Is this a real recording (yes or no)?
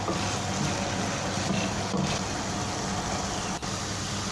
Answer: yes